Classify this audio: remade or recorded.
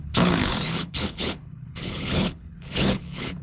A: remade